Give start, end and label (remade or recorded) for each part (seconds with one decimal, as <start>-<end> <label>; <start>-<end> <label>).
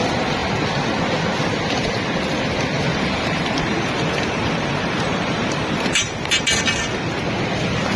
0.0-2.9 recorded; 2.9-6.6 remade; 6.6-8.0 recorded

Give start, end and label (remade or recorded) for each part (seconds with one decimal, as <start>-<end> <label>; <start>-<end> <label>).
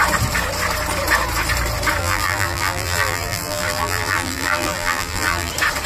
0.0-2.0 recorded; 2.0-5.5 remade; 5.5-5.9 recorded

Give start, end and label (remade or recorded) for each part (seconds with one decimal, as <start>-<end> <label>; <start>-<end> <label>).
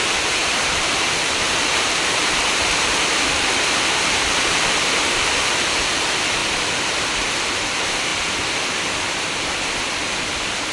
0.0-6.4 remade; 6.4-7.1 recorded; 7.1-8.1 remade; 8.1-9.9 recorded; 9.9-10.7 remade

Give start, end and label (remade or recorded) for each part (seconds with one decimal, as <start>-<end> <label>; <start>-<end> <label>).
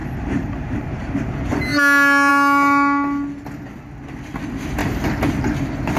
0.0-1.1 remade; 1.1-6.0 recorded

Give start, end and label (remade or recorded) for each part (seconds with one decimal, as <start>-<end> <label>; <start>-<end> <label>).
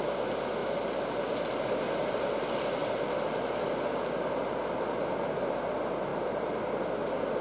0.0-7.4 recorded